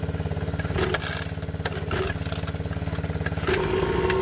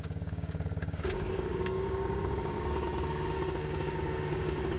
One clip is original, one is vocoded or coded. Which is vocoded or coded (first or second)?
second